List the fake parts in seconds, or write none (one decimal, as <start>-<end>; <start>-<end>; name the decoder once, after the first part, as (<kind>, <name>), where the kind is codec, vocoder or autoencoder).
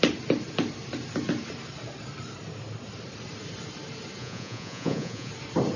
4.2-5.3 (vocoder, Vocos)